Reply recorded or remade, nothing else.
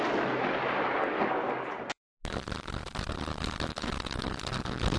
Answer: recorded